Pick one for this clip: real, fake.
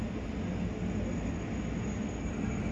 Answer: real